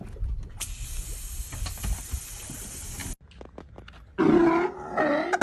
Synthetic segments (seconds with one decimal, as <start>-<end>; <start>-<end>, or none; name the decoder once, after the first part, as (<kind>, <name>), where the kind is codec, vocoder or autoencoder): none